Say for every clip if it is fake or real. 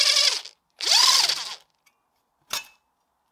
real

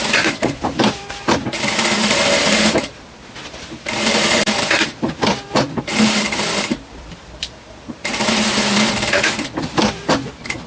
fake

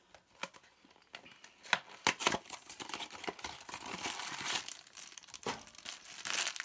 real